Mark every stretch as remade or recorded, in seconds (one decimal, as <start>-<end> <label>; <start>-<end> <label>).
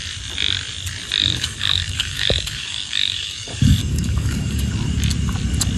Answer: 0.0-1.2 recorded; 1.2-4.7 remade; 4.7-5.8 recorded